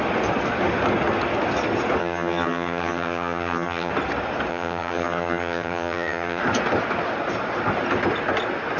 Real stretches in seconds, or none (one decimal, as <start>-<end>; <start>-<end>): 0.0-2.0; 3.9-4.5; 6.4-8.8